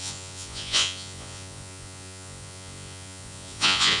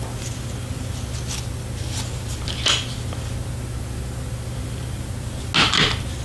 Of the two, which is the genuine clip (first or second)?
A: second